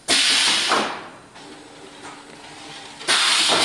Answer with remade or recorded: recorded